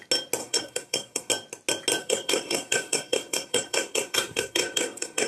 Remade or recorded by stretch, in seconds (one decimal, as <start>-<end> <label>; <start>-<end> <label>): 0.0-0.4 recorded; 0.4-1.3 remade; 1.3-2.0 recorded; 2.0-5.3 remade